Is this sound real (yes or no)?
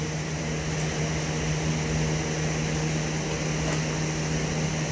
yes